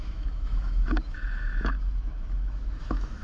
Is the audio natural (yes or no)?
no